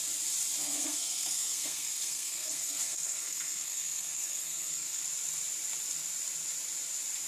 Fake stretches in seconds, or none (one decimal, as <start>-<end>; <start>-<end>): 0.6-5.0